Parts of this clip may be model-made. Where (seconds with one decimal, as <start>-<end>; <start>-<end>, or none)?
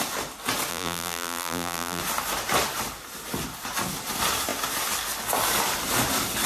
0.7-2.0